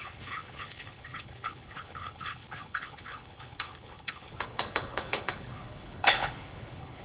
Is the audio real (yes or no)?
no